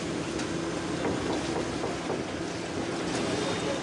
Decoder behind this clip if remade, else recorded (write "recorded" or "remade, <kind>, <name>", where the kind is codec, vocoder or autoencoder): recorded